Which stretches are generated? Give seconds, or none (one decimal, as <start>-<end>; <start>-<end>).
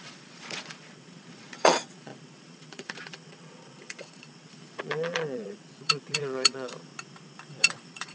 0.0-6.9; 7.6-8.1